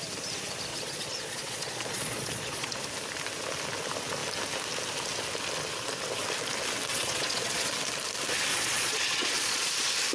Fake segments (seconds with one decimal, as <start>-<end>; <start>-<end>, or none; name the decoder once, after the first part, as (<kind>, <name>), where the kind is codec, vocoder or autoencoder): 0.7-2.8 (vocoder, Vocos); 6.9-7.7; 8.5-9.7

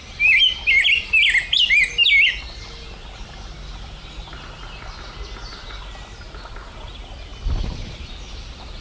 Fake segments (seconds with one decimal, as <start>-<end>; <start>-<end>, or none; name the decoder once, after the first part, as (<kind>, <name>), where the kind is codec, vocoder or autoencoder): none

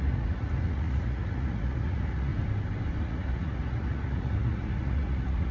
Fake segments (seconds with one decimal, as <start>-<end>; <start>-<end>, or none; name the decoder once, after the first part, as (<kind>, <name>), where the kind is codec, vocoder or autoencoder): 0.0-2.3 (vocoder, Vocos); 3.0-5.5

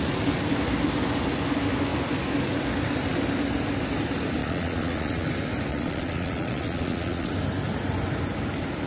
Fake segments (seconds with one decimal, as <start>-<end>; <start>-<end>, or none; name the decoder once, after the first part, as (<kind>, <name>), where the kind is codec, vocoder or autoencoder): 4.4-5.3 (vocoder, Vocos); 5.7-7.3

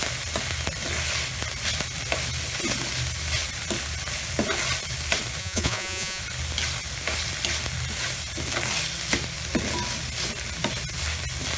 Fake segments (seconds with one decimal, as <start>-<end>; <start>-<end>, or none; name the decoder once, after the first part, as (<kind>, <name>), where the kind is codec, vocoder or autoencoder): 5.4-6.2 (vocoder, Vocos)